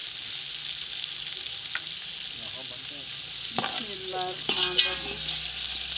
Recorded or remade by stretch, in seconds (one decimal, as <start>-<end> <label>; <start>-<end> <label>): 0.0-6.0 recorded